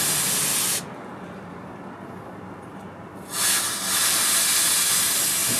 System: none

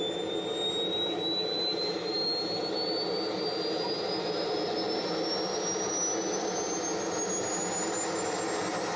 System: none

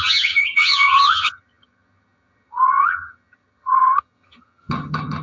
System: vocoder, HiFi-GAN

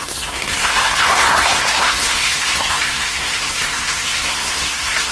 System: codec, SNAC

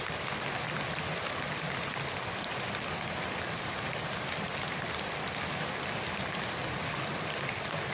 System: none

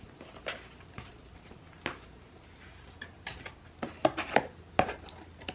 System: none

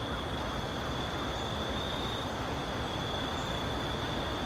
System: none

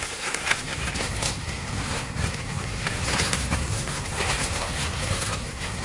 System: codec, SNAC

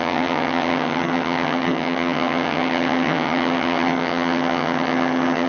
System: vocoder, HiFi-GAN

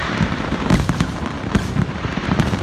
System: vocoder, BigVGAN v2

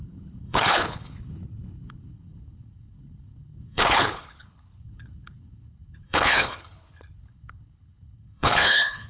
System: codec, HILCodec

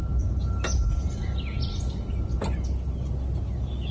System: none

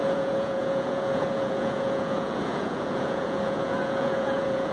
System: vocoder, Vocos